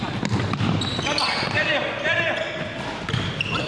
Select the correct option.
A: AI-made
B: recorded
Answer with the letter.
B